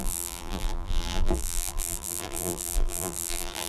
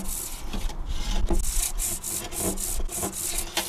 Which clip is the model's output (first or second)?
first